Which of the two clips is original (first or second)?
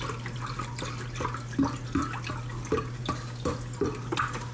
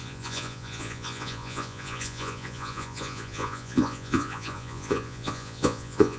first